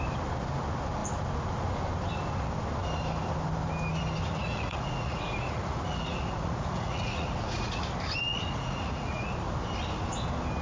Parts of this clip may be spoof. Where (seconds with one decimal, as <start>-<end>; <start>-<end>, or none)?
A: 4.4-7.8; 8.3-9.5